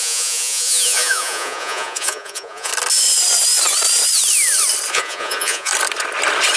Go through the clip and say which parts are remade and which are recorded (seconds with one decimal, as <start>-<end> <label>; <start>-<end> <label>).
0.0-2.7 remade; 2.7-4.9 recorded; 4.9-5.7 remade; 5.7-6.6 recorded